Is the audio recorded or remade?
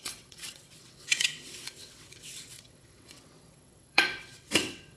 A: remade